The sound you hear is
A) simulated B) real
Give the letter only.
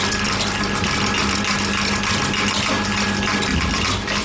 B